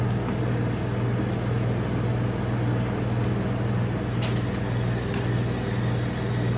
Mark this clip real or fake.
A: real